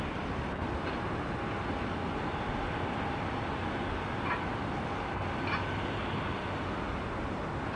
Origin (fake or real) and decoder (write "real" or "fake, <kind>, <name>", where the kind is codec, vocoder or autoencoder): real